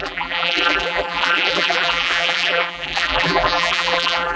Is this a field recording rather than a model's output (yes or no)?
no